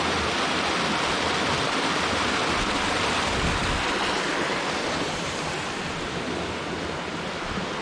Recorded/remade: recorded